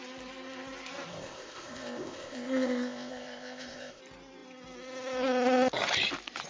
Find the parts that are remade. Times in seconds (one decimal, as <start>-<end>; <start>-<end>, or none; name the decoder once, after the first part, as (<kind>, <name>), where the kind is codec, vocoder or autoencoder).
1.1-4.0 (codec, ZipCodec)